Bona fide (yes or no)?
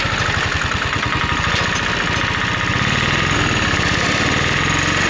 yes